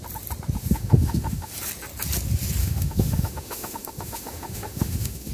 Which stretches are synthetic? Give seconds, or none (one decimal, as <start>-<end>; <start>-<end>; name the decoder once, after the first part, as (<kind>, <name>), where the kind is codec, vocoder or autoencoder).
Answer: 0.6-1.5 (autoencoder, DAC-VAE); 2.6-5.3